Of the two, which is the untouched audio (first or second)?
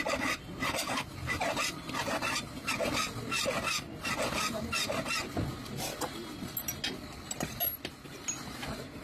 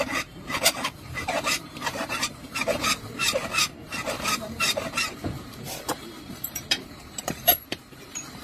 first